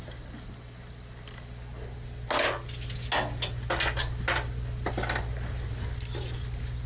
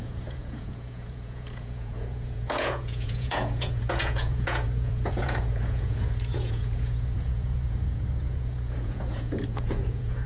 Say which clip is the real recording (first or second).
first